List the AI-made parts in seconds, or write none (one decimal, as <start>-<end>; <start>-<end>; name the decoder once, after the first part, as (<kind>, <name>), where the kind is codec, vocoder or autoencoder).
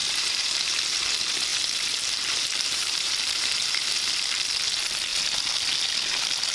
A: 0.0-1.0 (vocoder, BigVGAN v2); 1.5-4.4